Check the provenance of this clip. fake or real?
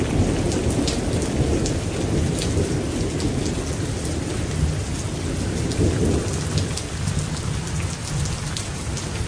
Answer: real